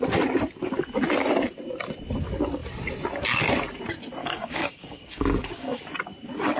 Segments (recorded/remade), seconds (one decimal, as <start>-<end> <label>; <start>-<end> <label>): 0.0-4.2 recorded; 4.2-5.8 remade; 5.8-6.6 recorded